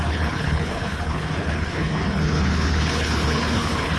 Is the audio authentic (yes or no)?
no